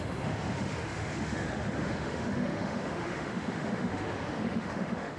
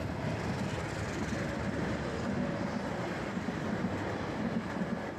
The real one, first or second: second